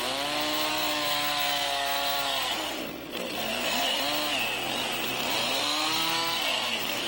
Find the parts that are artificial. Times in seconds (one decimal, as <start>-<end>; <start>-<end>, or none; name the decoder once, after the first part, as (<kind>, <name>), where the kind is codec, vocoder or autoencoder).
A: 0.7-4.0 (codec, SNAC); 5.4-7.1